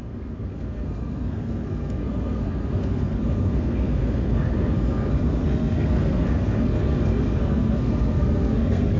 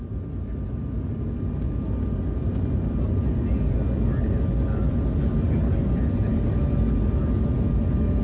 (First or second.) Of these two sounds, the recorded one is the second